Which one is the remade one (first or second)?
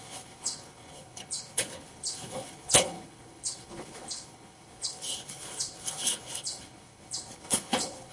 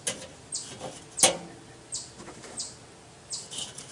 first